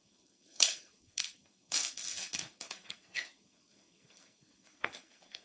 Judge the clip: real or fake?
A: fake